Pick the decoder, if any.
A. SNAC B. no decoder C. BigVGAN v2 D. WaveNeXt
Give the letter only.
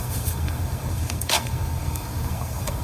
A